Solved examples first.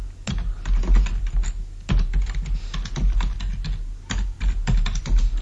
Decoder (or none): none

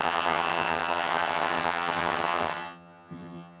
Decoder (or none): vocoder, HiFi-GAN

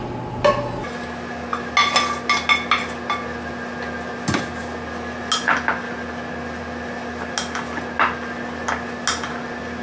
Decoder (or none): none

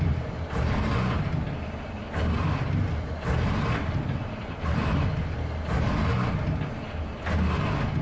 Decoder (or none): none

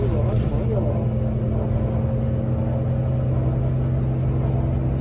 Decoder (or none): none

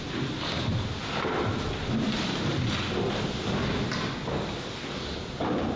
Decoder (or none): none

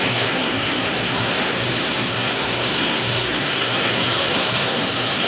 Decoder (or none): codec, SNAC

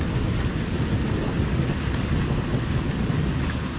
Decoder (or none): none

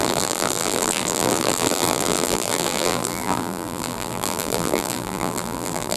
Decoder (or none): vocoder, BigVGAN v2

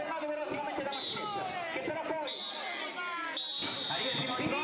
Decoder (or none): none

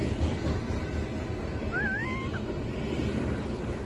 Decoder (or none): none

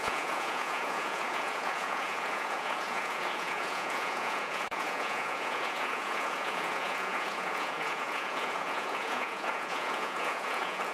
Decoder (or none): vocoder, Vocos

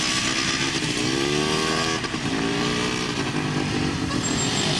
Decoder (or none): none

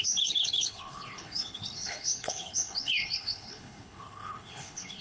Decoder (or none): codec, HILCodec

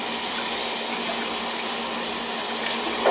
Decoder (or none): none